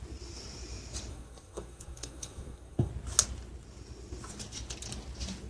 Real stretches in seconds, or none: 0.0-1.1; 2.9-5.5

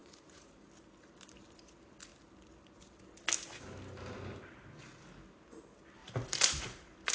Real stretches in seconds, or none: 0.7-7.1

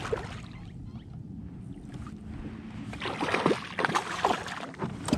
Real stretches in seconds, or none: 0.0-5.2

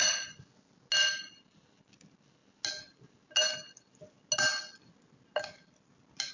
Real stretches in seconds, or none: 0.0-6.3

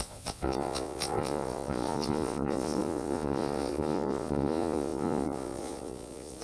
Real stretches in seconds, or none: none